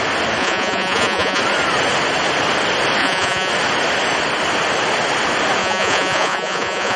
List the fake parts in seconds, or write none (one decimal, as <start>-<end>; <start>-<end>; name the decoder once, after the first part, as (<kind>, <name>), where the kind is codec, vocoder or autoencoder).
0.4-1.4 (vocoder, Vocos); 3.0-3.5; 5.6-7.0